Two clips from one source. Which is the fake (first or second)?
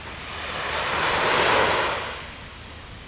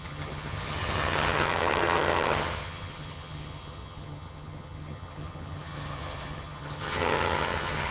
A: second